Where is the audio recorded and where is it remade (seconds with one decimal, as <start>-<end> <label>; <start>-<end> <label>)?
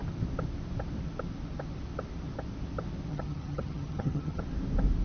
0.0-3.1 recorded; 3.1-4.4 remade; 4.4-5.0 recorded